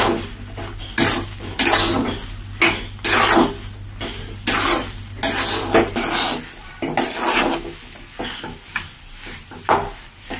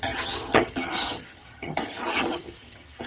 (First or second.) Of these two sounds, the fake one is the second